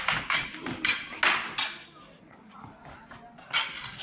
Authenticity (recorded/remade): recorded